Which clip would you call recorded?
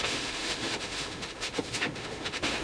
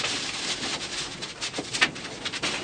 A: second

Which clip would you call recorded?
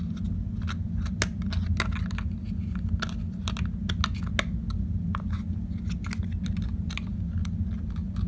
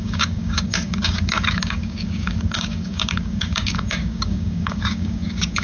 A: first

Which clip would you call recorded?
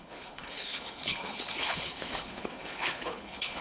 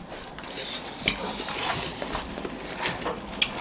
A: second